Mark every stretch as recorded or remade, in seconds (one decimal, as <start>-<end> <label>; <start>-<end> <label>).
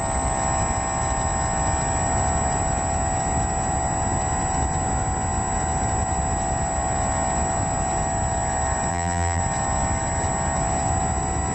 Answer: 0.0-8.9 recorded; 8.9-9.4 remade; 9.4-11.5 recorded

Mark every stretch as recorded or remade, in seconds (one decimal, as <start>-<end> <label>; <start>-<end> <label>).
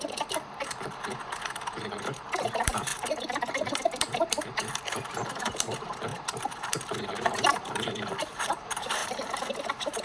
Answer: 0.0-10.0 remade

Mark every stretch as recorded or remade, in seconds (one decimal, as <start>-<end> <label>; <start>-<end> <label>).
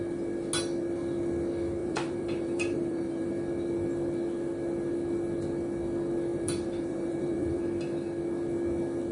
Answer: 0.0-1.8 recorded; 1.8-3.3 remade; 3.3-6.3 recorded; 6.3-7.6 remade; 7.6-9.1 recorded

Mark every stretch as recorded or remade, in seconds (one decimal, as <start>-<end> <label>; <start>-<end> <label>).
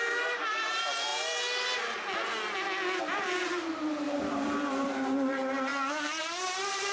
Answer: 0.0-1.1 remade; 1.1-3.0 recorded; 3.0-6.9 remade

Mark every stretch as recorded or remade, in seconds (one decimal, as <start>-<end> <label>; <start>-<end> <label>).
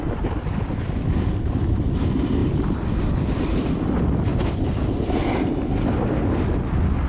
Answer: 0.0-7.1 recorded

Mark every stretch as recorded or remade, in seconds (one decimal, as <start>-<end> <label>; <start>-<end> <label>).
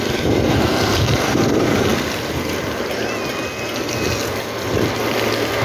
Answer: 0.0-5.6 recorded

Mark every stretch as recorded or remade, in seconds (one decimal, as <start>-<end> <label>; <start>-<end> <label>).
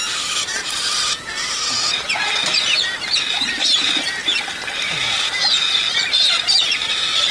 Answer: 0.0-7.3 remade